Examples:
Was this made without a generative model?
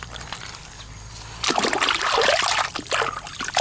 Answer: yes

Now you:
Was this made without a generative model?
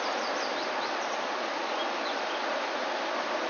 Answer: yes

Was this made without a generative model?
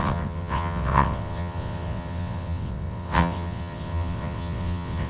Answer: no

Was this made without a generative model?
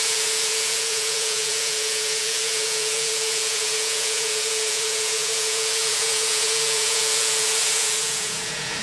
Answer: no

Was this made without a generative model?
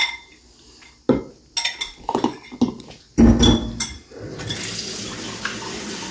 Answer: yes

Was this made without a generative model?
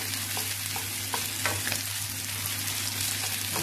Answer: yes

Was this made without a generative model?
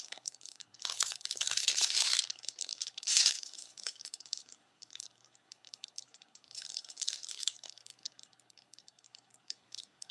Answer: no